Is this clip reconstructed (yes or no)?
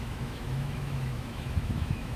yes